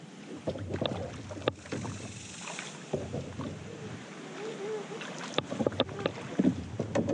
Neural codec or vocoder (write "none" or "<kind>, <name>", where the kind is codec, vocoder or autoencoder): none